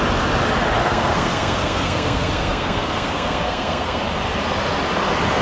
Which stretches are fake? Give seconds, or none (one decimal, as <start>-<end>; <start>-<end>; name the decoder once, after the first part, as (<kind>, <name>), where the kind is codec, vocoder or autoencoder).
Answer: 0.8-4.0 (codec, SNAC)